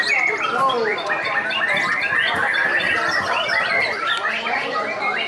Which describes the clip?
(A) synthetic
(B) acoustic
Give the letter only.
B